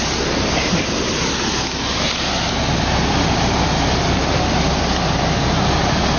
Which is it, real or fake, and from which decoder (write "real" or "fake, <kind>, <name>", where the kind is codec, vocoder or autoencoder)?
real